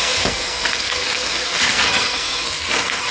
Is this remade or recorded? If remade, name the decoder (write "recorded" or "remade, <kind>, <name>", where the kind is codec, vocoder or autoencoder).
remade, codec, SNAC